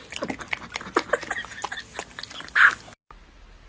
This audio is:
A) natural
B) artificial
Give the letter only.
A